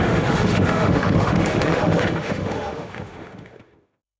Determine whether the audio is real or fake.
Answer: fake